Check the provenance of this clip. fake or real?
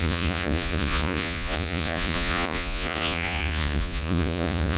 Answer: fake